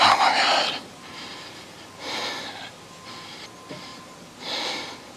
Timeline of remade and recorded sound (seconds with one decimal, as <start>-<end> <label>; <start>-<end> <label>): 0.0-5.2 recorded